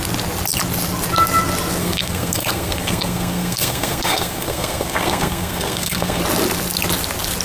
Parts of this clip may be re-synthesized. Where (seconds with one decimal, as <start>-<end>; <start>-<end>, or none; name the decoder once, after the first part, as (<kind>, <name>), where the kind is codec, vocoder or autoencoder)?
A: 1.8-6.2 (codec, SNAC)